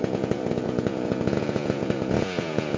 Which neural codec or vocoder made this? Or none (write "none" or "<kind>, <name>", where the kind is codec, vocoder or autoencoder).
vocoder, Vocos